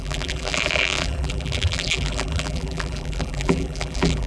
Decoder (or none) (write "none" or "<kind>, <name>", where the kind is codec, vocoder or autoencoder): vocoder, BigVGAN v2